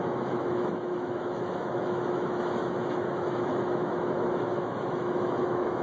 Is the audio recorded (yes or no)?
no